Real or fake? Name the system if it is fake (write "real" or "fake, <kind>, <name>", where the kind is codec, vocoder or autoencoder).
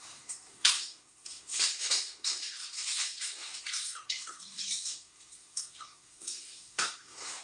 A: fake, codec, SNAC